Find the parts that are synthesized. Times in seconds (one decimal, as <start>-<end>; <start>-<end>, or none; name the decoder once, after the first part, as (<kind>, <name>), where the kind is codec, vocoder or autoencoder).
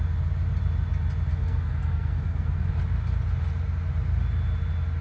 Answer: 1.3-2.7 (codec, SNAC)